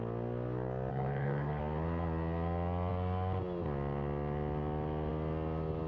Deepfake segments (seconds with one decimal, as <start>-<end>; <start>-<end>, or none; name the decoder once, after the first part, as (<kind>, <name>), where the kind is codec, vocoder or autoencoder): 0.9-1.6 (codec, SNAC)